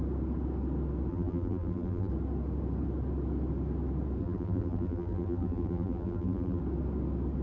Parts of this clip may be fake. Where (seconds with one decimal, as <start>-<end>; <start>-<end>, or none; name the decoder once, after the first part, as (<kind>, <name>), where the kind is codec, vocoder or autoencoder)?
1.1-2.1 (vocoder, BigVGAN v2); 4.2-6.6